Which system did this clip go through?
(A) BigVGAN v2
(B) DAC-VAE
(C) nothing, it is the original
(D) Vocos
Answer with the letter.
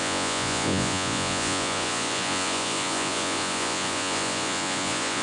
D